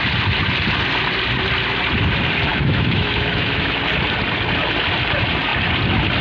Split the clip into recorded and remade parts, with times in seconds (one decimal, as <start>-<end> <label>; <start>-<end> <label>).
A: 0.0-2.5 recorded; 2.5-3.8 remade; 3.8-6.2 recorded